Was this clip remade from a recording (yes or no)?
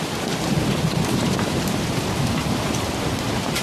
yes